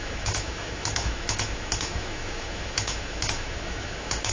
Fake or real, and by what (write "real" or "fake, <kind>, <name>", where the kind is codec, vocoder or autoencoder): fake, autoencoder, DAC-VAE